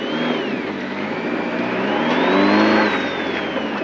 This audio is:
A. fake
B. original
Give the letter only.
B